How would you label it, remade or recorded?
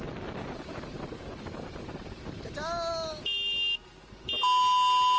recorded